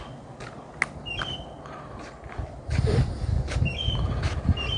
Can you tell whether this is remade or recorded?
recorded